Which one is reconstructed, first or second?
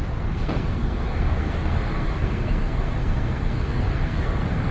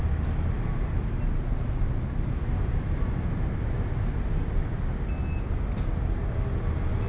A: first